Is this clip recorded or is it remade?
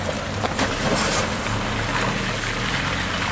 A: recorded